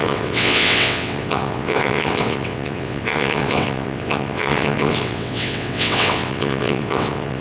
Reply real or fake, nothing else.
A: fake